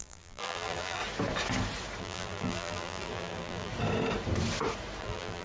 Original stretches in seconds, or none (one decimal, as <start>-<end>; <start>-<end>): 1.0-2.0; 3.7-5.0